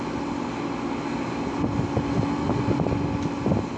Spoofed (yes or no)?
no